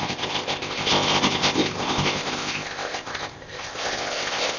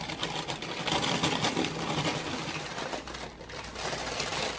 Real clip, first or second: second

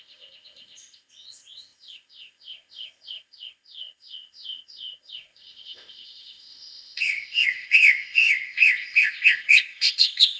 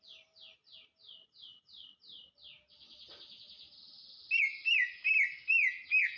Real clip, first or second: second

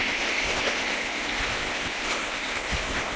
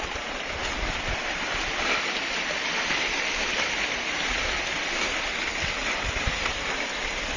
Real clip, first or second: second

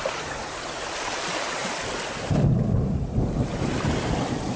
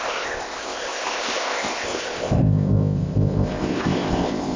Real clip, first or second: first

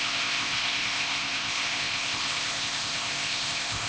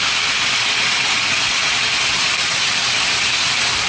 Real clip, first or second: second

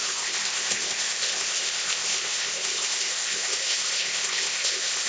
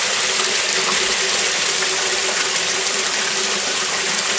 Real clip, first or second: second